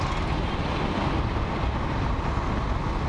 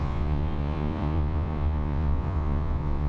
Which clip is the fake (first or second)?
second